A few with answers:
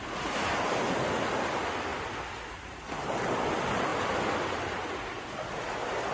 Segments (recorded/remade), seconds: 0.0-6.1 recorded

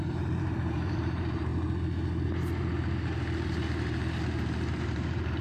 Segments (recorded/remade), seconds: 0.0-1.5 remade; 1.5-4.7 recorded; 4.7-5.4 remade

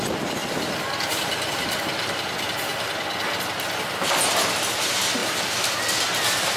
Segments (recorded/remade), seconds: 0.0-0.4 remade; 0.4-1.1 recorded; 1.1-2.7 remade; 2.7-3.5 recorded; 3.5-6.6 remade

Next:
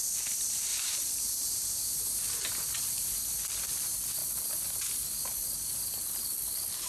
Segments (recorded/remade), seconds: 0.0-0.7 recorded; 0.7-2.0 remade; 2.0-6.9 recorded

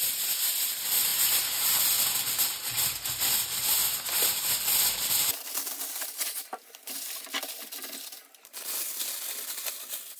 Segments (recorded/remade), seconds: 0.0-1.1 remade; 1.1-3.1 recorded; 3.1-3.8 remade; 3.8-4.3 recorded; 4.3-10.2 remade

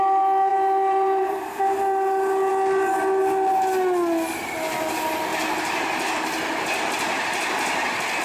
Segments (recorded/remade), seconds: 0.0-0.5 recorded; 0.5-1.6 remade; 1.6-8.2 recorded